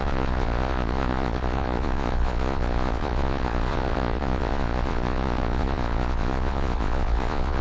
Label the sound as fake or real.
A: fake